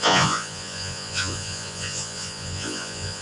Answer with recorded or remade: remade